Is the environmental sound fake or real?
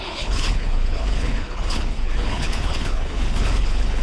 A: fake